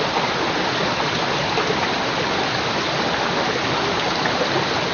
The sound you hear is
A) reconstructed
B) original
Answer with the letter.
B